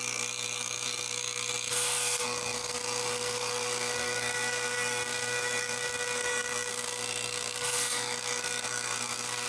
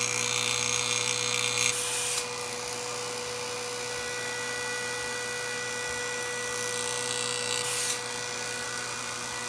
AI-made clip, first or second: first